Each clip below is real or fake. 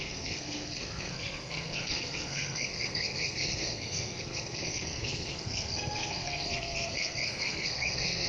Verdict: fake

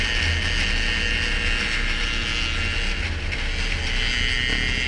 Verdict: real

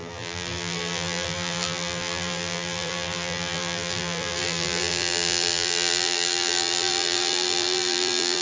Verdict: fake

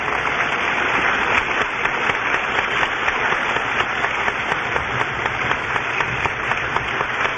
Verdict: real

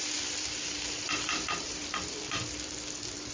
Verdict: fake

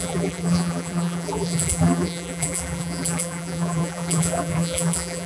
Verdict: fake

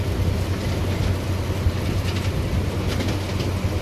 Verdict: real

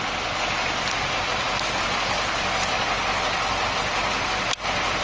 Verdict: real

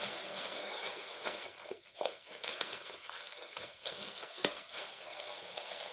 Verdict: fake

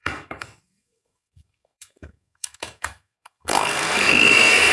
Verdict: fake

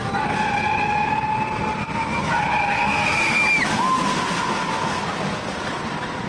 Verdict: real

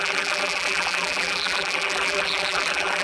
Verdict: fake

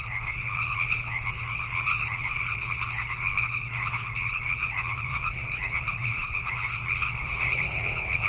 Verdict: fake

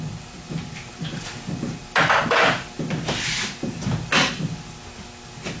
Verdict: real